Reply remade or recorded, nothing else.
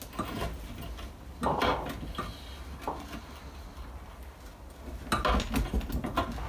recorded